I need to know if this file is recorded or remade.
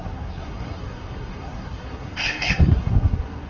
remade